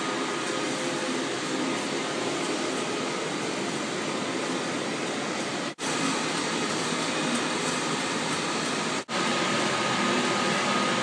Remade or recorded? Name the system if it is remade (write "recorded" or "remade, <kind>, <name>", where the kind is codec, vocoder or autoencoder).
recorded